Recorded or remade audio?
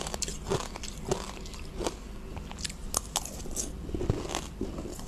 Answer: recorded